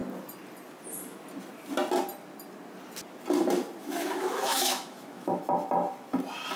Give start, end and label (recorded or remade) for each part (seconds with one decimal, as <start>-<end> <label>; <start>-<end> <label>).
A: 0.0-3.8 recorded; 3.8-5.4 remade; 5.4-6.6 recorded